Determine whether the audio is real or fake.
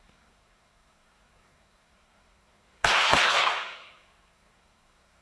fake